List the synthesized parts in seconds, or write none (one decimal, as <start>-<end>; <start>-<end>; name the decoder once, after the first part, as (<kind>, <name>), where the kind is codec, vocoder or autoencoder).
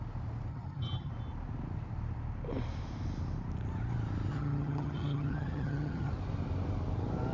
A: 0.5-1.1 (vocoder, HiFi-GAN); 4.3-6.1